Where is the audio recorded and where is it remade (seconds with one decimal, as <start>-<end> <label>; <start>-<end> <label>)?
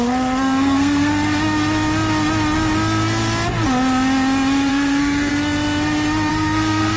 0.0-1.1 remade; 1.1-4.7 recorded; 4.7-5.3 remade; 5.3-6.3 recorded; 6.3-7.0 remade